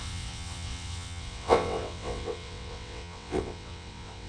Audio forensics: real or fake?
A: fake